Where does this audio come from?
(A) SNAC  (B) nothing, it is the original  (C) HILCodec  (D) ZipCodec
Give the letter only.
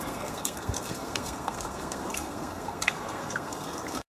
A